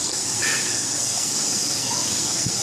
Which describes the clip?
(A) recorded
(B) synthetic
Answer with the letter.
B